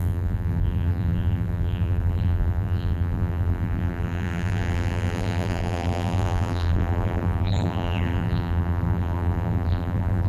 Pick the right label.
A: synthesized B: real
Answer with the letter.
A